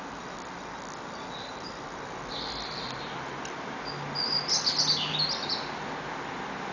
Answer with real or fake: real